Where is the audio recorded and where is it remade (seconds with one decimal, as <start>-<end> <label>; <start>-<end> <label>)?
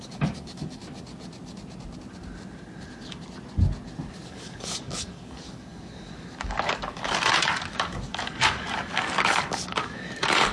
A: 0.0-0.8 remade; 0.8-4.3 recorded; 4.3-10.5 remade